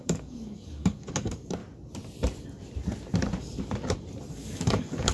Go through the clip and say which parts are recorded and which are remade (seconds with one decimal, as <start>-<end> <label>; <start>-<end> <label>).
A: 0.0-1.6 remade; 1.6-4.3 recorded; 4.3-5.1 remade